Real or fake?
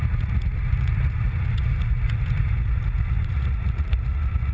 fake